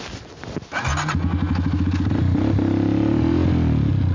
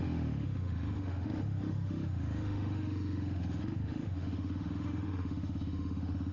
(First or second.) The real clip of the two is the first